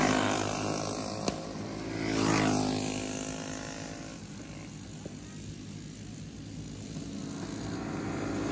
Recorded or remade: recorded